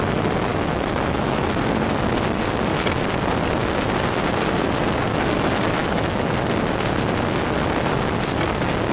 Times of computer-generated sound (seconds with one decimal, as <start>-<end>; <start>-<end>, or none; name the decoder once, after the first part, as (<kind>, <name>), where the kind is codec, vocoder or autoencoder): 0.5-1.4 (autoencoder, DAC-VAE); 5.8-6.3